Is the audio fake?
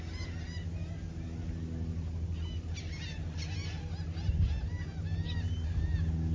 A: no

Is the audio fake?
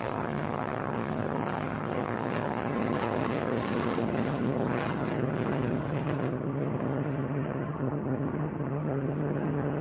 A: yes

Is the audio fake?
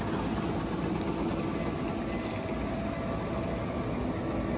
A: no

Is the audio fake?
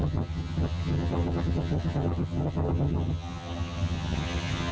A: yes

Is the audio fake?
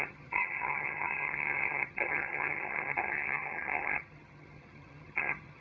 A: yes